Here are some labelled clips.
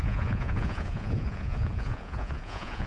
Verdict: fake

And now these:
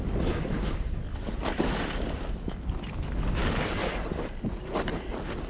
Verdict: real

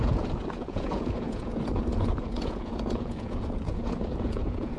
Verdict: fake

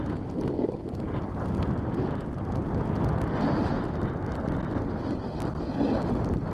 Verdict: real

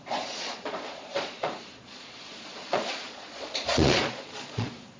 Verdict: fake